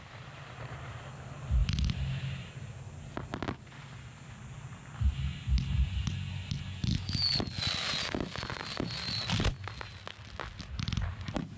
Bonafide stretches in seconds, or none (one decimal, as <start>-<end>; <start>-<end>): 0.0-11.6